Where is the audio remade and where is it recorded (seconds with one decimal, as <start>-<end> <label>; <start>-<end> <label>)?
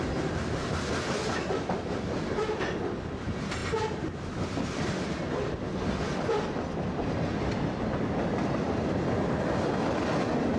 0.0-10.6 recorded